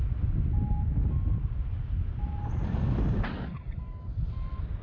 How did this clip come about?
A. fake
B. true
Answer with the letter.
B